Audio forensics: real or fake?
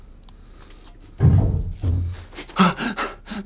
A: real